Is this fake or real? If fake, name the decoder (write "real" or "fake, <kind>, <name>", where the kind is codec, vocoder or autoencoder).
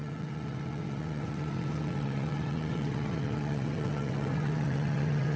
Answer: fake, vocoder, WaveNeXt